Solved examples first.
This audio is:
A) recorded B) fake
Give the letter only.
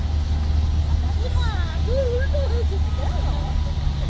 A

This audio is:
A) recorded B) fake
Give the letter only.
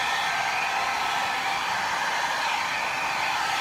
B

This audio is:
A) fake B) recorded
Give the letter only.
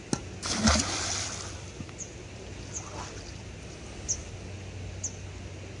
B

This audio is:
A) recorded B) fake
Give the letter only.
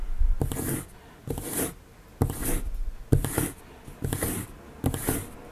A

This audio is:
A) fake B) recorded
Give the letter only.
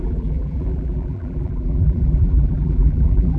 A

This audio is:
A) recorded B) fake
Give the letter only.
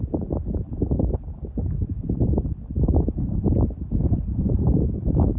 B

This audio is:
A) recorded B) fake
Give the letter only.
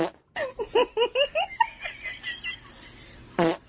A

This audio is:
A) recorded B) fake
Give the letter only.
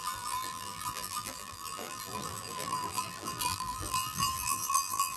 B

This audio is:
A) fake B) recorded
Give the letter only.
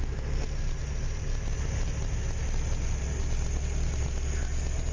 B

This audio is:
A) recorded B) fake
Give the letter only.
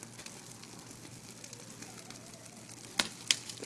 A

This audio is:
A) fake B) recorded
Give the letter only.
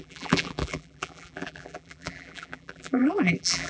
A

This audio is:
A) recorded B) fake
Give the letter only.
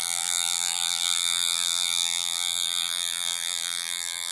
B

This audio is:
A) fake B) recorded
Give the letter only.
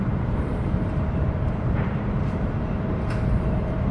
A